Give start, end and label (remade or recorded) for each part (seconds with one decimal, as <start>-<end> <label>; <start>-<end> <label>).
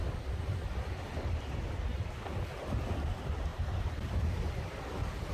0.0-3.5 recorded; 3.5-4.5 remade; 4.5-5.3 recorded